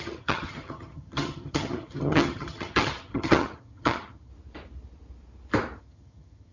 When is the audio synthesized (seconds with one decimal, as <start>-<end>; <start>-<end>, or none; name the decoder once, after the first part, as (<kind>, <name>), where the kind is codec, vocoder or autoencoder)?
0.0-4.3 (vocoder, HiFi-GAN); 5.8-6.5